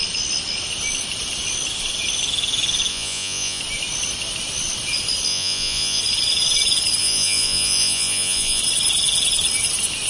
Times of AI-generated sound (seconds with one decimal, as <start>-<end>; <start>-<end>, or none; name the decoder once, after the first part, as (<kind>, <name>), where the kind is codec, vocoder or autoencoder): 2.9-3.6 (vocoder, Vocos); 5.3-6.0; 7.0-8.6